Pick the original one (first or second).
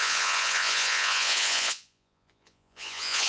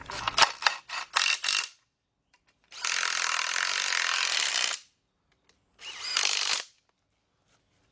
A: second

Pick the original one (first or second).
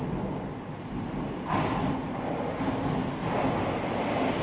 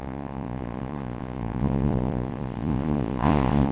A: first